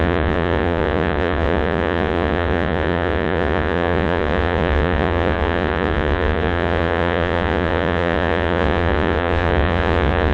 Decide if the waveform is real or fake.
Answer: fake